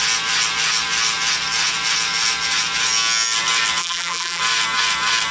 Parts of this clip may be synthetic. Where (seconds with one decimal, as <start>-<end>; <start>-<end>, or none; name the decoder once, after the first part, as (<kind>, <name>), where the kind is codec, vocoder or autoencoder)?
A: 3.8-4.4 (vocoder, BigVGAN v2)